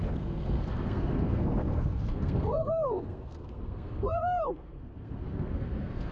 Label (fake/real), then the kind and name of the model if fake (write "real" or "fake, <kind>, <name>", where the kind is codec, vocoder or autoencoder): fake, codec, SNAC